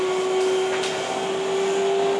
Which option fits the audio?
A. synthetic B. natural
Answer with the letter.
B